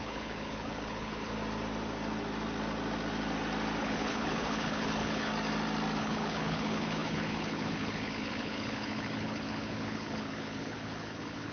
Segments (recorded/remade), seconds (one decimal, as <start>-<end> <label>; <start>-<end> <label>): 0.0-1.3 remade; 1.3-3.8 recorded; 3.8-5.3 remade; 5.3-6.0 recorded; 6.0-11.5 remade